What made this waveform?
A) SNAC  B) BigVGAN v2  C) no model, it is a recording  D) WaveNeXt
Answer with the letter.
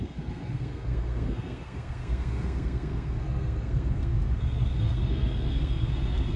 A